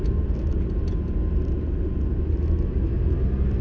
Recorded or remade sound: recorded